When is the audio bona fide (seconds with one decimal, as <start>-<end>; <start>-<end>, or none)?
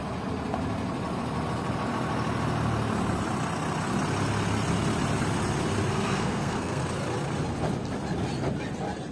0.0-5.9; 6.8-9.1